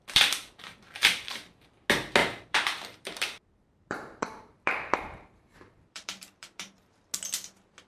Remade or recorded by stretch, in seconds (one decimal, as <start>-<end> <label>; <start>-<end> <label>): 0.0-2.2 recorded; 2.2-6.9 remade; 6.9-7.9 recorded